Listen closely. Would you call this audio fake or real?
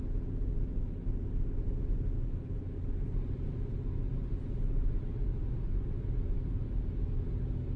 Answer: real